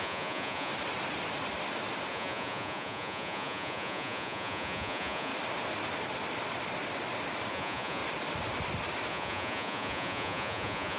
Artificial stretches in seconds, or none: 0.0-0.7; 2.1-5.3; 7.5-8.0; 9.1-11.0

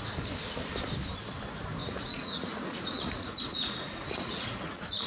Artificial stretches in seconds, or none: 1.8-5.1

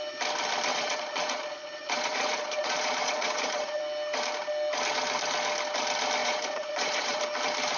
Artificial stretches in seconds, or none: 0.7-3.8; 6.2-7.2

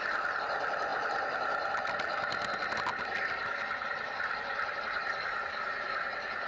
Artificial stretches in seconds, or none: none

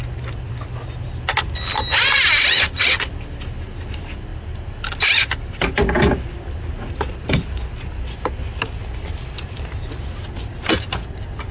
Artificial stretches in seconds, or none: none

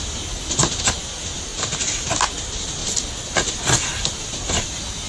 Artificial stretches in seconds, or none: none

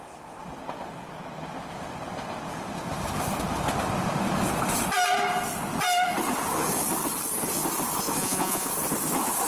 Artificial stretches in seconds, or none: 8.2-8.7